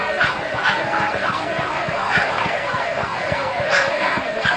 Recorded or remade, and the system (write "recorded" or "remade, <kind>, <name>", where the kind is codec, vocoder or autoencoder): remade, codec, SNAC